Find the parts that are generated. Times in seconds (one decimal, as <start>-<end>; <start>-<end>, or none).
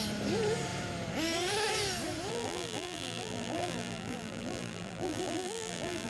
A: 2.3-6.1